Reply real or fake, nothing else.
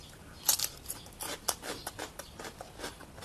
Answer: real